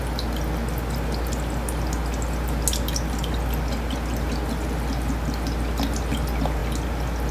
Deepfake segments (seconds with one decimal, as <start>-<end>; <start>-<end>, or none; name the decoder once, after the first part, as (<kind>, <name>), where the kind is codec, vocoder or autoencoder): none